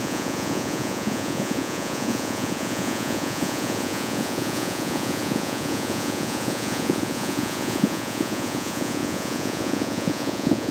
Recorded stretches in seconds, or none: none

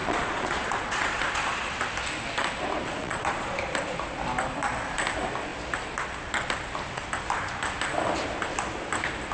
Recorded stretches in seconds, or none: 1.8-3.0; 3.5-9.3

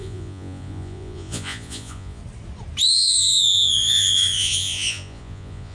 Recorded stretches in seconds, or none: 2.2-2.9

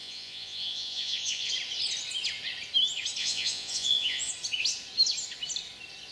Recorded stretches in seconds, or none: 1.5-3.2; 4.3-6.1

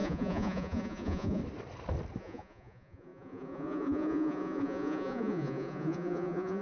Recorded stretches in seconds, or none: 1.4-2.2

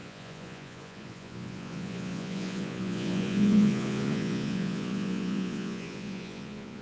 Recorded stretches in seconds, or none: none